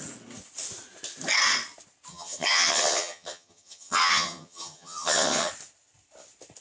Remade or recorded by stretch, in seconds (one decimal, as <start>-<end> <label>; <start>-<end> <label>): 0.0-2.1 recorded; 2.1-5.5 remade; 5.5-6.6 recorded